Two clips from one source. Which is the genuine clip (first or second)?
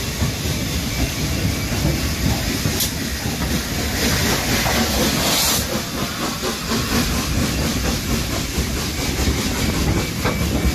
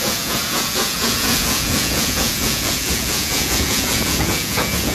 first